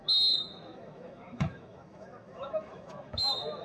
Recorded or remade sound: remade